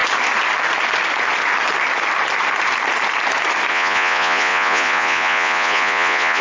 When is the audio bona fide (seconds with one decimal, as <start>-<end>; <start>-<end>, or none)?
0.0-3.7